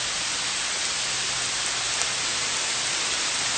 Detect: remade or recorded recorded